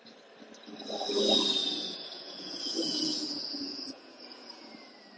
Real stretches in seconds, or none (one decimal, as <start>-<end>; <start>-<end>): 0.0-1.6; 4.7-5.2